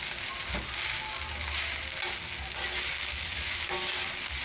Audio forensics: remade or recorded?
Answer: recorded